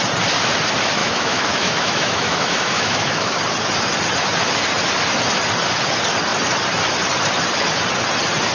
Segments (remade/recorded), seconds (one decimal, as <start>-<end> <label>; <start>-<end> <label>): 0.0-1.0 recorded; 1.0-3.4 remade; 3.4-8.5 recorded